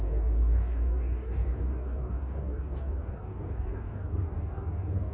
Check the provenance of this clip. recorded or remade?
remade